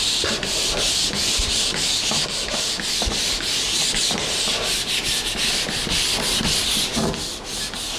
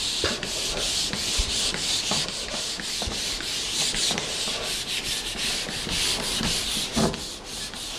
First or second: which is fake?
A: second